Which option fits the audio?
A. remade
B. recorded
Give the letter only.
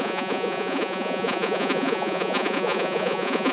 A